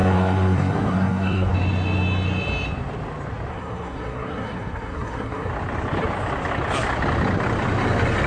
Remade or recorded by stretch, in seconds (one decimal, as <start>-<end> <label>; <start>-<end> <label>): 0.0-1.5 remade; 1.5-3.5 recorded; 3.5-5.5 remade; 5.5-8.3 recorded